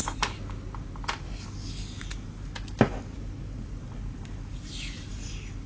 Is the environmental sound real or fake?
real